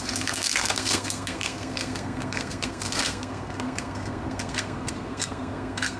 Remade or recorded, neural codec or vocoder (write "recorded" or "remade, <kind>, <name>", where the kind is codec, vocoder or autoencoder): remade, codec, SNAC